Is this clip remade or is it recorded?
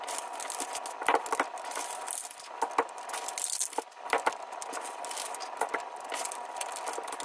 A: recorded